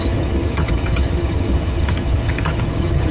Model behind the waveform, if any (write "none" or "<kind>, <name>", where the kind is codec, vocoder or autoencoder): vocoder, HiFi-GAN